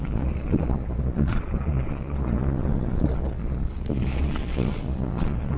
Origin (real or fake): fake